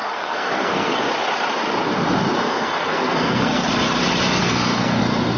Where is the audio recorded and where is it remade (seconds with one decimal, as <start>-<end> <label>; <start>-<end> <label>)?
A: 0.0-1.0 remade; 1.0-2.5 recorded; 2.5-3.7 remade; 3.7-4.4 recorded; 4.4-5.0 remade; 5.0-5.4 recorded